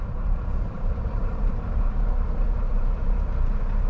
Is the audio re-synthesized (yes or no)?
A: yes